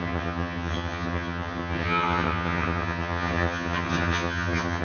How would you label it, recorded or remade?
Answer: remade